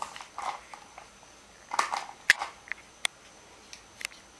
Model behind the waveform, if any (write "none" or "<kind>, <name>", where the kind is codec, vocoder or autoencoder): none